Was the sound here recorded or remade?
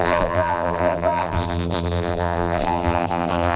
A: remade